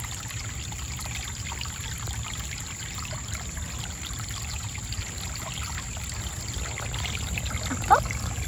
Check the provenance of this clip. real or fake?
real